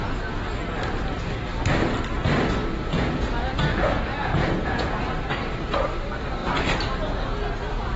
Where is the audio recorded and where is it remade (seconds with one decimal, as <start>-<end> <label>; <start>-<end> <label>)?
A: 0.0-2.6 recorded; 2.6-5.1 remade; 5.1-8.0 recorded